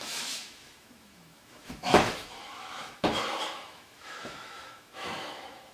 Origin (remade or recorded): remade